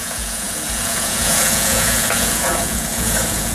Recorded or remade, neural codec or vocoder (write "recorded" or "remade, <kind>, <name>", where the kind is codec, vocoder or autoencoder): remade, vocoder, Vocos